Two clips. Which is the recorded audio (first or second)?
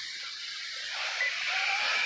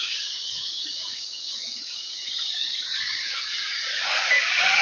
first